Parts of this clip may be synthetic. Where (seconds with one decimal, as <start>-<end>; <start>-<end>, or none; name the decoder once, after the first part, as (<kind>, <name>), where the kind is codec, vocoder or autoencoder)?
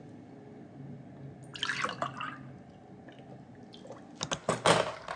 none